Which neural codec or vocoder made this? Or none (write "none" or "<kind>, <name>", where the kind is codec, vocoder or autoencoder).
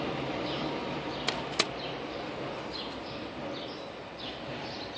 none